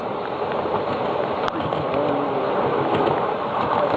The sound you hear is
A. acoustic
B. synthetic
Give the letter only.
A